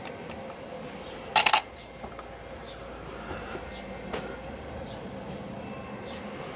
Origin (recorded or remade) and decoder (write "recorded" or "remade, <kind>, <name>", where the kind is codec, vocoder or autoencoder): recorded